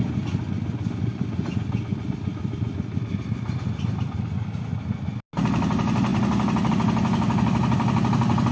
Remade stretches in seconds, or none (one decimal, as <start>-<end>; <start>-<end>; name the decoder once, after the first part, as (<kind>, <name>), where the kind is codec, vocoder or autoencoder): none